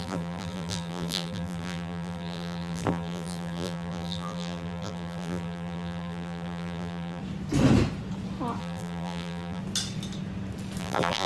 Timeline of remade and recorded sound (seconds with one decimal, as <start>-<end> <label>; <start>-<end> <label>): 0.0-7.2 remade; 7.2-8.6 recorded; 8.6-9.6 remade; 9.6-10.8 recorded; 10.8-11.3 remade